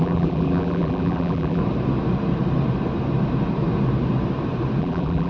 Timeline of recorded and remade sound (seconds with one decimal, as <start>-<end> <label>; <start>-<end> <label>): 0.0-1.6 remade; 1.6-4.8 recorded; 4.8-5.3 remade